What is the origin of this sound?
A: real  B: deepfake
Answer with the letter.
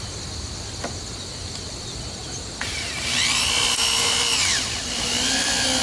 A